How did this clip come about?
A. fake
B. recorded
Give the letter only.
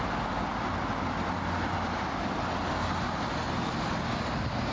B